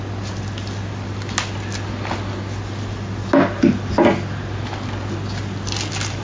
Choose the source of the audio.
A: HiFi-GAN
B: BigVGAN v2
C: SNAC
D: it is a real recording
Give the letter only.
D